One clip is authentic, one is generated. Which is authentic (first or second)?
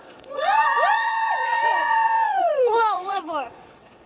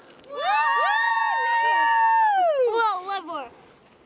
second